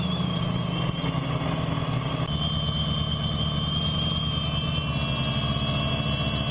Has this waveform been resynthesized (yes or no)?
no